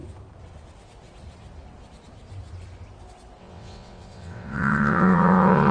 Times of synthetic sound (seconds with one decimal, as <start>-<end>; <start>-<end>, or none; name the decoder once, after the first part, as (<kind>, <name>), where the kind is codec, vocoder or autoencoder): 3.4-5.7 (vocoder, WaveNeXt)

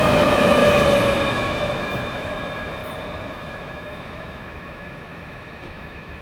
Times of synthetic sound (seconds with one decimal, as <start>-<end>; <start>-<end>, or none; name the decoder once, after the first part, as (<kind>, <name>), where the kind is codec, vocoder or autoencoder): 0.0-0.6 (autoencoder, DAC-VAE); 1.3-2.8; 3.3-6.2